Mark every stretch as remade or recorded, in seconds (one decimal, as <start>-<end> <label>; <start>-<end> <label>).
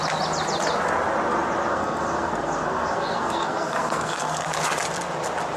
0.0-1.7 recorded; 1.7-4.5 remade; 4.5-5.6 recorded